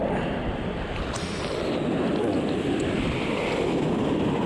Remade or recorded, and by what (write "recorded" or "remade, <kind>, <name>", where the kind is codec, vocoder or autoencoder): recorded